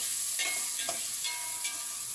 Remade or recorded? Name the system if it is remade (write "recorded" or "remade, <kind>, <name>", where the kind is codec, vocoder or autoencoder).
recorded